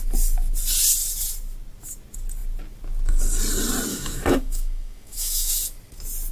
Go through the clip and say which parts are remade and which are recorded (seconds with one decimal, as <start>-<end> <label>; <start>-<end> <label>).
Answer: 0.0-3.9 recorded; 3.9-5.5 remade; 5.5-6.3 recorded